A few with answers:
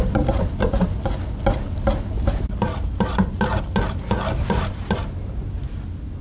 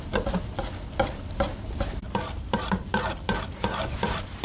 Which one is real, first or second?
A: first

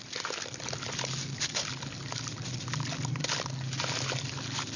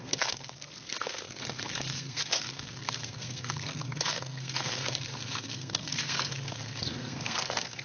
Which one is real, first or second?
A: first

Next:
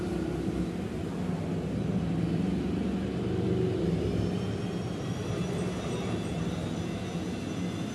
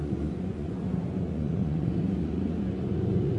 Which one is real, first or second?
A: first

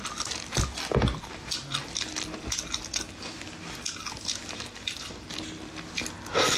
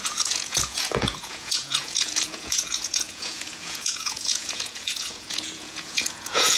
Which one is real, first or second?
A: first